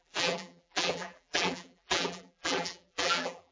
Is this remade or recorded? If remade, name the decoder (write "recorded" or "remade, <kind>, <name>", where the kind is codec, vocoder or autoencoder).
remade, vocoder, BigVGAN v2